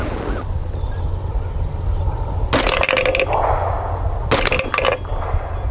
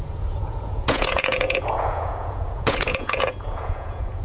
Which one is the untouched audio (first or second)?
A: first